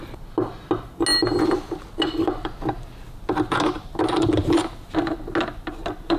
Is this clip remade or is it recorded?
recorded